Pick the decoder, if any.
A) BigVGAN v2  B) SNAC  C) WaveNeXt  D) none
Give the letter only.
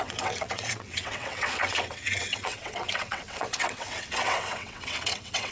C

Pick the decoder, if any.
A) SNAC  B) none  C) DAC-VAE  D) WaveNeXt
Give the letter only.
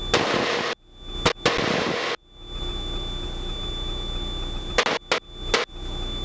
B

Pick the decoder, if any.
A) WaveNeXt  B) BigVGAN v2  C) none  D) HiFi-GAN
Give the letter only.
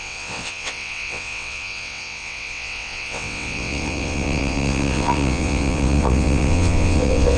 A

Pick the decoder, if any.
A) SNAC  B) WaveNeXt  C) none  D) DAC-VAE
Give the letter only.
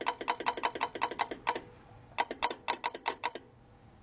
C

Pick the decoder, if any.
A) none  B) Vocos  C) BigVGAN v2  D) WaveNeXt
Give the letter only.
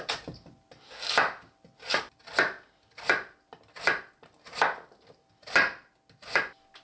A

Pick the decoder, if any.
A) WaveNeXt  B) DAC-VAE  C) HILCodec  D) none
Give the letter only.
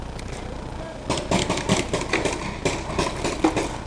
D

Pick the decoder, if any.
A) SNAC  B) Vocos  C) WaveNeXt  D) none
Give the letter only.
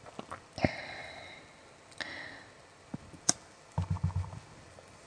D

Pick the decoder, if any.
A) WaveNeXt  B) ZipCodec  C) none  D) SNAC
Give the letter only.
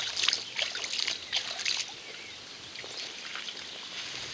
C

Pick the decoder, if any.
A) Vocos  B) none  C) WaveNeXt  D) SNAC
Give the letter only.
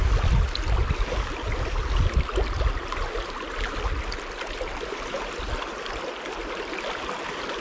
B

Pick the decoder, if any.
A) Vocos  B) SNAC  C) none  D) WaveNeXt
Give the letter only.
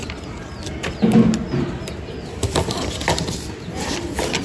C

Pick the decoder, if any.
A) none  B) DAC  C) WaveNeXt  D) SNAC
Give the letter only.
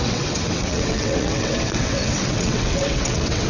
C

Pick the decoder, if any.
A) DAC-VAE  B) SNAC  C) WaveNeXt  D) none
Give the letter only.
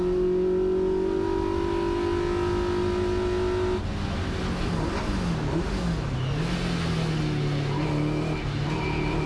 D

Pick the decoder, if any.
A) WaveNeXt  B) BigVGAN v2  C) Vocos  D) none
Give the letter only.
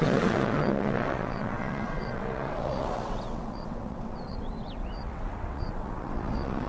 A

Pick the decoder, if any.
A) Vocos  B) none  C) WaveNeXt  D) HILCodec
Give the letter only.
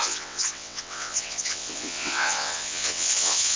C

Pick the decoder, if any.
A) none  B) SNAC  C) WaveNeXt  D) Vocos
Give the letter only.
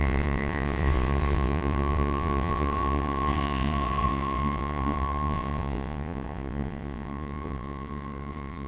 C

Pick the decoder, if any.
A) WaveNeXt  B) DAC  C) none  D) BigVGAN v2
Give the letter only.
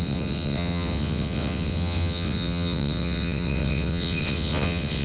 A